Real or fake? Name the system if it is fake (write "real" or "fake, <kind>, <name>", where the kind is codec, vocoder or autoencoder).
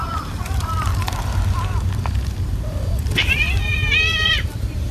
fake, vocoder, BigVGAN v2